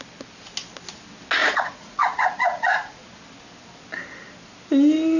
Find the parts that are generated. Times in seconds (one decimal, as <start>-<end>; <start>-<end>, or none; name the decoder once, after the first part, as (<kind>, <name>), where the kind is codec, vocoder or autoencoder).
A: 1.4-3.0 (vocoder, Vocos)